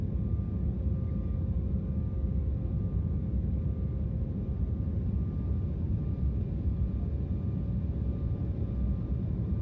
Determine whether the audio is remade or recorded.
recorded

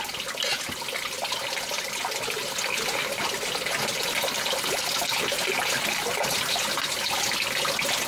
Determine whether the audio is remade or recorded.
recorded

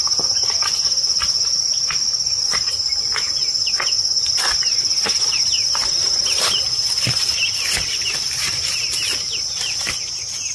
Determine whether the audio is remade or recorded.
recorded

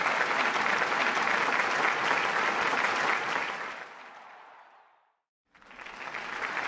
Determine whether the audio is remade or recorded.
recorded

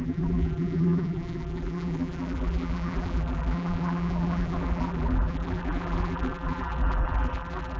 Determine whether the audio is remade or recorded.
remade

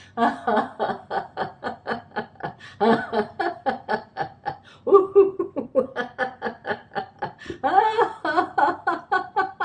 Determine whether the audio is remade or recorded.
remade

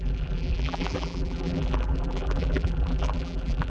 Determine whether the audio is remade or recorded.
remade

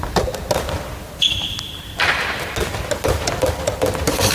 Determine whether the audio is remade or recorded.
recorded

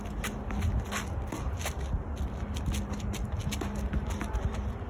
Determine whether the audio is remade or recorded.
recorded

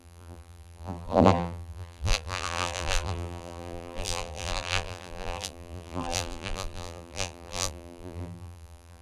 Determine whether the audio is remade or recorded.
remade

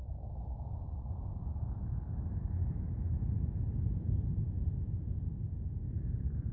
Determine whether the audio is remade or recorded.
recorded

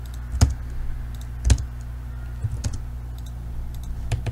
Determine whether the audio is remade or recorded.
recorded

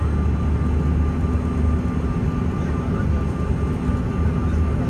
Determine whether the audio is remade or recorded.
recorded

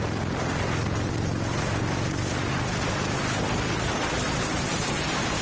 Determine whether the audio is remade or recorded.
remade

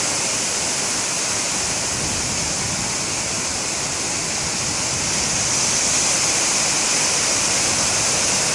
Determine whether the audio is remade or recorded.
recorded